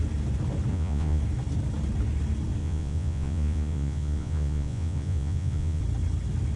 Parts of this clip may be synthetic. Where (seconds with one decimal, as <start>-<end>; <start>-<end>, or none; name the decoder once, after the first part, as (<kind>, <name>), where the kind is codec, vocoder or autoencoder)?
0.7-1.2 (vocoder, Vocos); 2.6-5.8